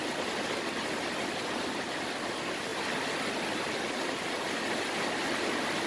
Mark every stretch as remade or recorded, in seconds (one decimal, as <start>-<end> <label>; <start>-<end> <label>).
0.0-5.9 recorded